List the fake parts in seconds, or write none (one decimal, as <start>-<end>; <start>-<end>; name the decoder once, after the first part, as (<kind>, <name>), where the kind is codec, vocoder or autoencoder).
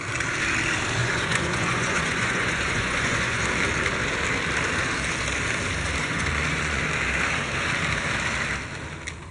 1.0-3.4 (vocoder, Vocos); 6.0-6.8